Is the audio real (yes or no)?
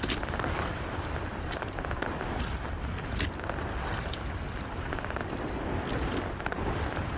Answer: yes